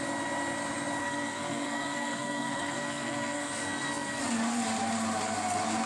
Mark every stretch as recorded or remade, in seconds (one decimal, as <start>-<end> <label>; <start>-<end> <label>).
0.0-1.0 recorded; 1.0-4.2 remade; 4.2-5.9 recorded